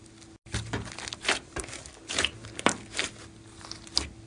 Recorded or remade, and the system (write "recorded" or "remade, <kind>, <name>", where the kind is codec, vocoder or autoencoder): recorded